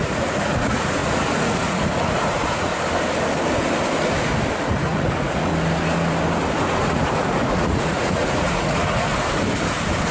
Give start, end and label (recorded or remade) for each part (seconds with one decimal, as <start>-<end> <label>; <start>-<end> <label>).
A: 0.0-2.7 remade; 2.7-4.6 recorded; 4.6-5.5 remade; 5.5-6.6 recorded; 6.6-9.1 remade; 9.1-10.1 recorded